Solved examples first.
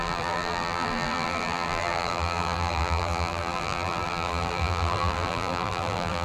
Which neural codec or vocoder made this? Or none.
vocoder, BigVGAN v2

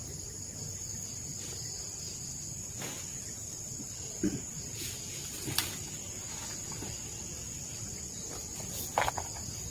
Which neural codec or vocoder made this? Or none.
none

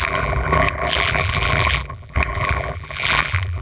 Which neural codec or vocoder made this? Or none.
vocoder, BigVGAN v2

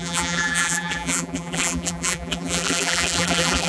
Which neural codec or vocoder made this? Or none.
vocoder, BigVGAN v2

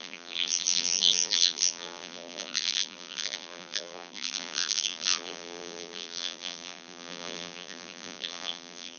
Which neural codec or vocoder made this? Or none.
vocoder, BigVGAN v2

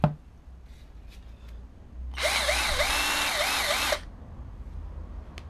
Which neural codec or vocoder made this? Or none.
none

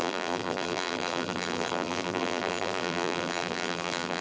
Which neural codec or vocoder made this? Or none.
vocoder, BigVGAN v2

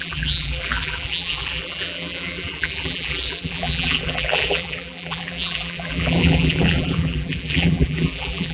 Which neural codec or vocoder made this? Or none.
vocoder, BigVGAN v2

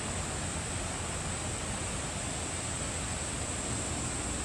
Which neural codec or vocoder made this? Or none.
none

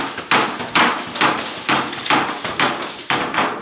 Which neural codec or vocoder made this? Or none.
none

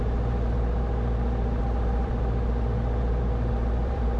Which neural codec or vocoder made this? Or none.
vocoder, BigVGAN v2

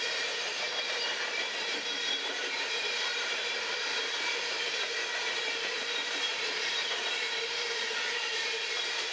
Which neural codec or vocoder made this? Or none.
vocoder, BigVGAN v2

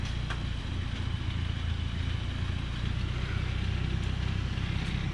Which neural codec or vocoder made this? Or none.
none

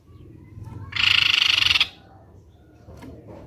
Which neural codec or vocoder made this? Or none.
vocoder, BigVGAN v2